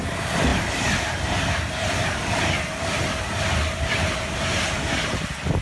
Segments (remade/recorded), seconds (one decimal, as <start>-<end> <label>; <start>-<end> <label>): 0.0-5.6 recorded